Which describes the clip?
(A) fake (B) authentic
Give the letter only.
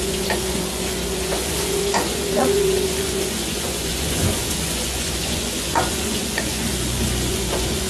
A